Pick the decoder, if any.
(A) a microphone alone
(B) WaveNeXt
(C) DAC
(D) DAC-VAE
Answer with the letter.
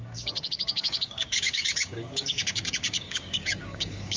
C